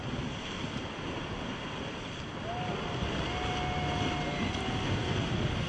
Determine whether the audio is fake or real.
real